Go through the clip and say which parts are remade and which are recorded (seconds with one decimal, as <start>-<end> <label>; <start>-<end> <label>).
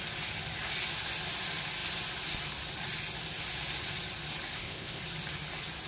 0.0-4.5 recorded; 4.5-5.0 remade; 5.0-5.9 recorded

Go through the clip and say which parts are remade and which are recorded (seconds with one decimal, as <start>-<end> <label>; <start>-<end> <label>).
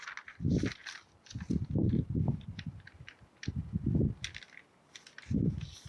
0.0-0.8 recorded; 0.8-3.2 remade; 3.2-5.9 recorded